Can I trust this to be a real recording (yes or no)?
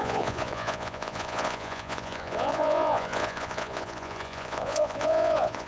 no